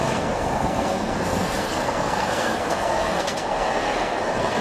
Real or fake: fake